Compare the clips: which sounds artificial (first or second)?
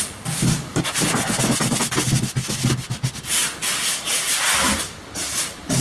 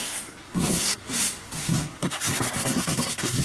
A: second